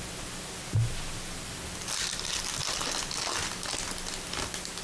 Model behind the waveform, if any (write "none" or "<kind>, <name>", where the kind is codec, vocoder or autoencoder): none